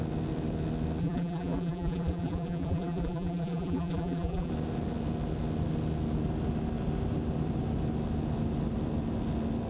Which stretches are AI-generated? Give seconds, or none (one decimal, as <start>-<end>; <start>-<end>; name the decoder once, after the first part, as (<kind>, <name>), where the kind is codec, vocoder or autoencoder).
1.0-4.5 (vocoder, BigVGAN v2)